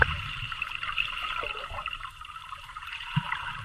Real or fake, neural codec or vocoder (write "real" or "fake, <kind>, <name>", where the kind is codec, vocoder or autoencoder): fake, vocoder, BigVGAN v2